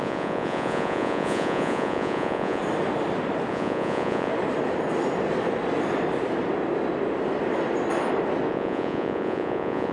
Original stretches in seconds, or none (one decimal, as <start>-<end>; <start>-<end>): 2.6-3.5; 4.3-8.5